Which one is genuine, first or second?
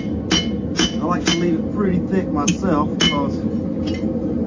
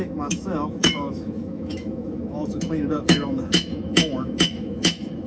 first